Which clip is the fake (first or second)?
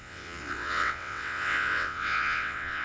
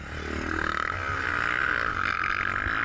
first